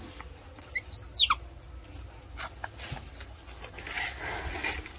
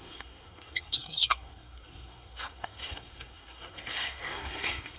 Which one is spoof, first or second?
second